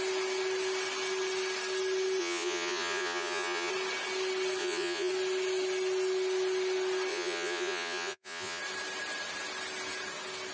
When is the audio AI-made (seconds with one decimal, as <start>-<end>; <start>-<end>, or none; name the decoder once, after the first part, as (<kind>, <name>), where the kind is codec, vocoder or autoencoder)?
2.2-3.7 (vocoder, Vocos); 4.6-5.1; 7.1-8.6